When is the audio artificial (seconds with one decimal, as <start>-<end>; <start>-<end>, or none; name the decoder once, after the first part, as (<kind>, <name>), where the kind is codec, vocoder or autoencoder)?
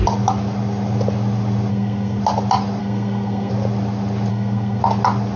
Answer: 1.7-2.2 (codec, SNAC); 2.8-3.5; 4.3-4.8